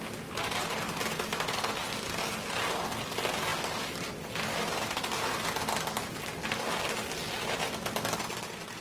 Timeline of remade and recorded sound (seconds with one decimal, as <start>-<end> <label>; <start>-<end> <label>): 0.0-8.8 recorded